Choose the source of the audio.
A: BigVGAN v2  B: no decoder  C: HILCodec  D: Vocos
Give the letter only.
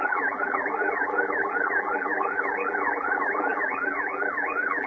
A